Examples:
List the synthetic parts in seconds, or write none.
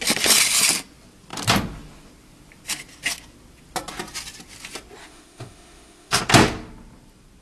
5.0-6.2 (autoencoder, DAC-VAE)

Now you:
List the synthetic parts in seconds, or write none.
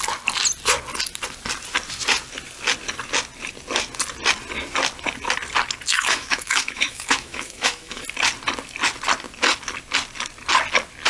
5.9-8.0 (autoencoder, DAC-VAE)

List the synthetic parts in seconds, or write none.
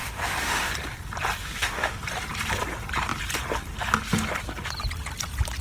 0.0-0.7 (autoencoder, DAC-VAE); 1.4-2.0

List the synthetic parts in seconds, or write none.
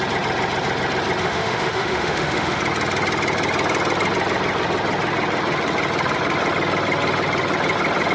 1.2-2.6 (autoencoder, DAC-VAE)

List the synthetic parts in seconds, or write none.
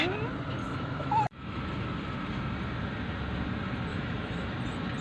0.6-1.6 (autoencoder, DAC-VAE); 3.9-4.5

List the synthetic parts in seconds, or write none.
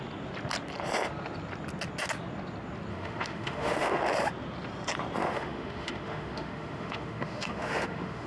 2.9-4.0 (autoencoder, DAC-VAE); 5.2-8.3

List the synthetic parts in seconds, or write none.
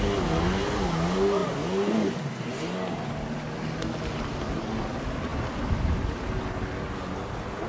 none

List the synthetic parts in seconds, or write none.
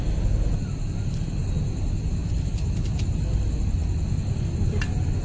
none